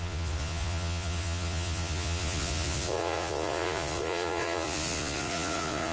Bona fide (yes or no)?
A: no